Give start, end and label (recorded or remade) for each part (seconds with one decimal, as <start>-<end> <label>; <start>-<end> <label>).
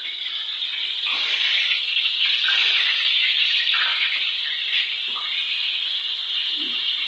0.0-0.7 remade; 0.7-2.0 recorded; 2.0-3.9 remade; 3.9-6.3 recorded; 6.3-7.1 remade